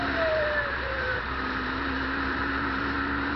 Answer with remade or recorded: remade